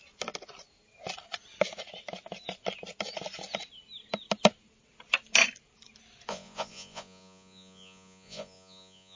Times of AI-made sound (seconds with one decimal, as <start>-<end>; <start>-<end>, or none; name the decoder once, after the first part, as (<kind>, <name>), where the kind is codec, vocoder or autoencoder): 6.3-9.2 (vocoder, Vocos)